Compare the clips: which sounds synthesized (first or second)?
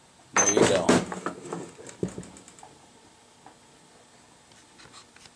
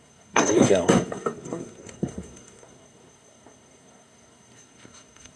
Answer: second